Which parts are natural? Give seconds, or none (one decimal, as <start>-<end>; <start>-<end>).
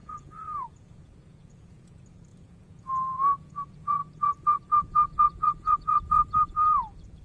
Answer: none